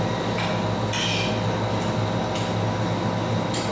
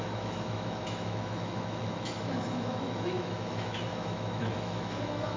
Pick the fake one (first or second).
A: second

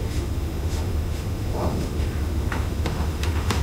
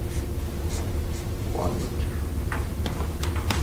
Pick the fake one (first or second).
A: first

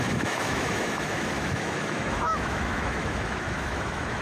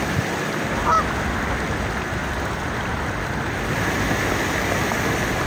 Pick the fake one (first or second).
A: first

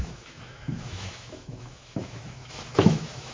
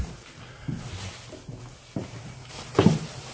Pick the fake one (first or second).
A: first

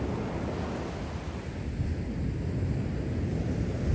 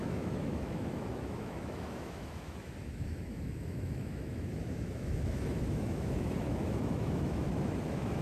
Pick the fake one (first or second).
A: second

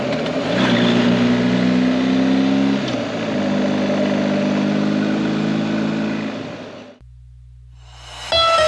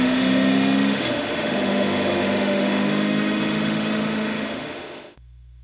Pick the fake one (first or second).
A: second